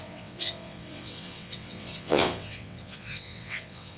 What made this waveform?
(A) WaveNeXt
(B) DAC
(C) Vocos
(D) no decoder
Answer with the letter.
A